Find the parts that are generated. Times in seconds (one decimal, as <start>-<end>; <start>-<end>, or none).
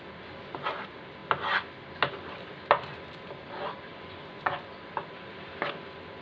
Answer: 3.9-4.7